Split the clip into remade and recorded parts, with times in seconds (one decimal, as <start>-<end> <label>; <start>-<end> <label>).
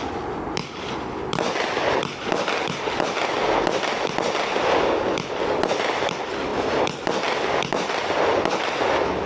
0.0-9.3 recorded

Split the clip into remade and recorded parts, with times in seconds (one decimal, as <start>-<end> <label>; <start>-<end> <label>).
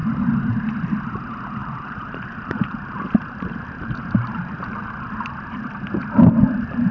0.0-1.6 recorded; 1.6-4.8 remade; 4.8-6.9 recorded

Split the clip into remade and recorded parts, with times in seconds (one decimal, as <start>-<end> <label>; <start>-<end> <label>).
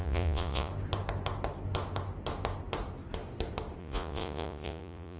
0.0-0.7 remade; 0.7-3.8 recorded; 3.8-5.2 remade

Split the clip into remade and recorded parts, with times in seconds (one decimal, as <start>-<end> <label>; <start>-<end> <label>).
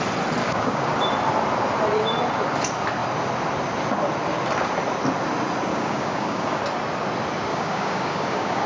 0.0-0.4 recorded; 0.4-0.9 remade; 0.9-5.7 recorded; 5.7-6.6 remade; 6.6-7.5 recorded; 7.5-8.7 remade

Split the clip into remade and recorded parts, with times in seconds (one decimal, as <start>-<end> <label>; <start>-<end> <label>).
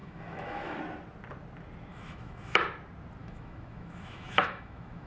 0.0-0.8 remade; 0.8-1.9 recorded; 1.9-2.6 remade; 2.6-3.2 recorded; 3.2-5.1 remade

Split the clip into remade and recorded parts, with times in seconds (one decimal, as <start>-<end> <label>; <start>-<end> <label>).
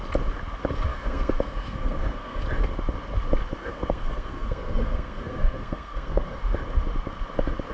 0.0-0.9 recorded; 0.9-2.4 remade; 2.4-3.6 recorded; 3.6-6.4 remade; 6.4-7.7 recorded